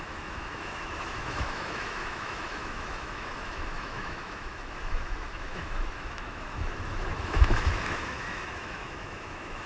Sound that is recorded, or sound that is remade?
remade